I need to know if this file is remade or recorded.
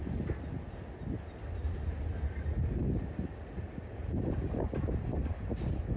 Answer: recorded